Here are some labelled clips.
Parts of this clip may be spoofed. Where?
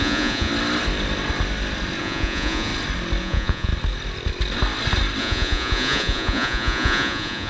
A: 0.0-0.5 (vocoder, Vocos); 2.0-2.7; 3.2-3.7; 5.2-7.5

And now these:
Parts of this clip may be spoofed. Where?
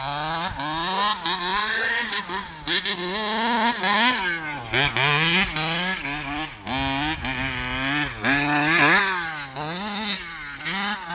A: 1.5-2.5 (vocoder, WaveNeXt)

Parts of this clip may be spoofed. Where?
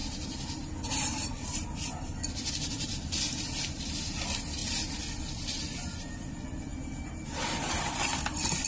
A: 6.7-7.9 (vocoder, BigVGAN v2)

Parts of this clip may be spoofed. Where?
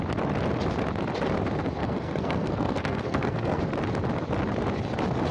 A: 1.8-3.6 (codec, SNAC)